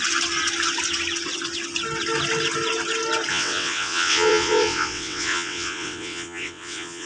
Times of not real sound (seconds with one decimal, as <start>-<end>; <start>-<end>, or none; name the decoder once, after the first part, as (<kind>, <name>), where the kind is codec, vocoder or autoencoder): 3.3-7.1 (vocoder, WaveNeXt)